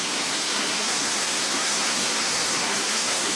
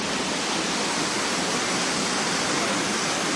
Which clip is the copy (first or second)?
first